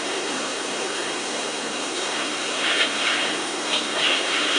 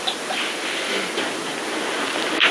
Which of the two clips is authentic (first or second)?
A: second